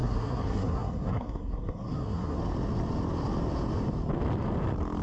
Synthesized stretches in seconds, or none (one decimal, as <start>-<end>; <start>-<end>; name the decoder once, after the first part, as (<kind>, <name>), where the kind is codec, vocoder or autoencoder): 0.0-2.4 (codec, SNAC)